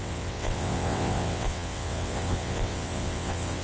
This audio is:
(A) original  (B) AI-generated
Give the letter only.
B